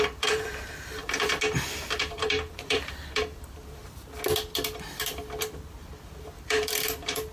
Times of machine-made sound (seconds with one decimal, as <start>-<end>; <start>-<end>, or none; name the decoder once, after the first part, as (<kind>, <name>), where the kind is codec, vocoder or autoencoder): 0.0-1.3 (vocoder, BigVGAN v2); 2.0-3.8; 5.4-7.3